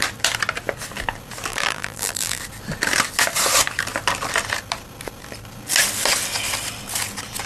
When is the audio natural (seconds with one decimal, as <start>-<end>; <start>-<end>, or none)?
0.0-1.5; 2.4-7.5